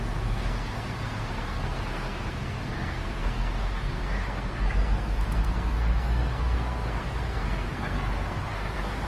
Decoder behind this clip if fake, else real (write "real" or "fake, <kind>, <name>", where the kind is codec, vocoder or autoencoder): fake, codec, SNAC